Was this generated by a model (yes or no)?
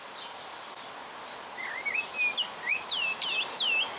no